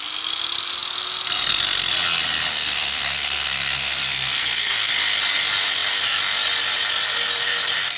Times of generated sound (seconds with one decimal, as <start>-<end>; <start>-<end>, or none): 2.5-4.9